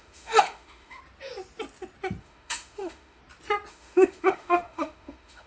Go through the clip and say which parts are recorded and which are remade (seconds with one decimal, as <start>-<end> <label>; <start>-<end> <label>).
0.0-1.0 remade; 1.0-2.2 recorded; 2.2-3.2 remade; 3.2-3.7 recorded; 3.7-5.5 remade